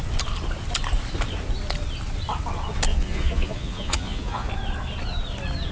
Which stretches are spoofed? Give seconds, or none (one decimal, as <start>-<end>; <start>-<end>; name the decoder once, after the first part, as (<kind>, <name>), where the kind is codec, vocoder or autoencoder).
2.9-4.5 (vocoder, Vocos)